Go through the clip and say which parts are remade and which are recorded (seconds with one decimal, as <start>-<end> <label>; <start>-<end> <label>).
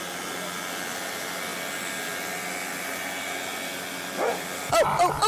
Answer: 0.0-5.3 recorded